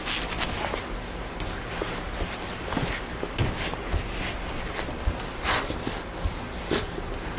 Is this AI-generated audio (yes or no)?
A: no